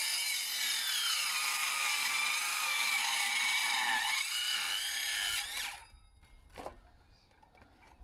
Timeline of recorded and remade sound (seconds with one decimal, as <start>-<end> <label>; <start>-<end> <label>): 0.0-1.5 recorded; 1.5-2.1 remade; 2.1-2.5 recorded; 2.5-3.3 remade; 3.3-8.0 recorded